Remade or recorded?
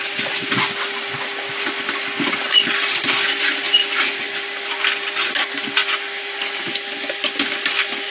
recorded